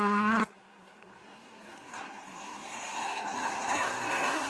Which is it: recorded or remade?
remade